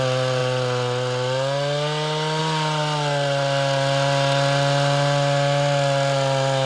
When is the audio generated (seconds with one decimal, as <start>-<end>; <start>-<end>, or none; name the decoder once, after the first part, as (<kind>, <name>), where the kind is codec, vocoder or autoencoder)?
none

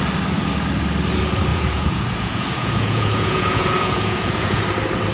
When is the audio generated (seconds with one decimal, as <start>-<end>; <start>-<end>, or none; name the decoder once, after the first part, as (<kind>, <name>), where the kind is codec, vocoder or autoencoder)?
1.5-4.6 (vocoder, Vocos)

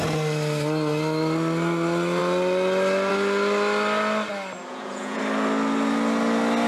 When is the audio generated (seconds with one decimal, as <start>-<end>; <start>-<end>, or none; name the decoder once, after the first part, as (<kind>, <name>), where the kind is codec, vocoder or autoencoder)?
4.7-5.2 (vocoder, Vocos)

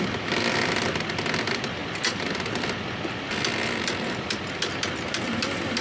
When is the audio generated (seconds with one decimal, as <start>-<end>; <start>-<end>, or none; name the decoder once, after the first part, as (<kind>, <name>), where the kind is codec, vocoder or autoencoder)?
none

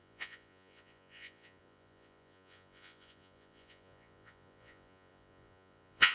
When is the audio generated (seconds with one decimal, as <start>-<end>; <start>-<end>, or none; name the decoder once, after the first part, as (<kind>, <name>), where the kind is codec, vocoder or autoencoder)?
0.0-6.1 (vocoder, Vocos)